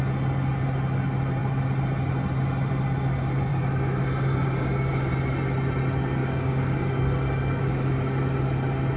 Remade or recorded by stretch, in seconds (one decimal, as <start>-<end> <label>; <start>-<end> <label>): 0.0-3.5 recorded; 3.5-5.1 remade; 5.1-6.2 recorded; 6.2-8.2 remade; 8.2-9.0 recorded